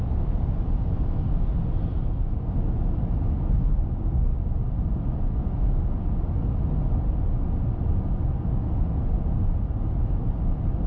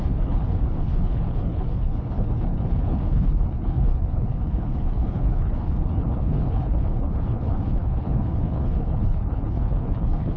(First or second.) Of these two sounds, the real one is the first